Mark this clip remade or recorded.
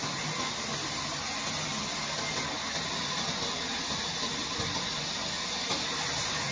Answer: recorded